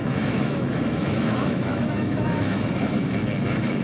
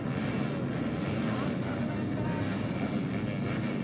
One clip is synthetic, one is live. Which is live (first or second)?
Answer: second